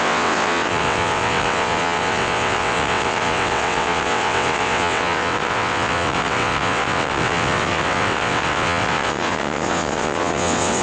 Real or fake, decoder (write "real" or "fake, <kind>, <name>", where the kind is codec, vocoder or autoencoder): fake, vocoder, WaveNeXt